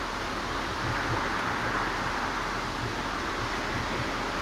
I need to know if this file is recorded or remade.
recorded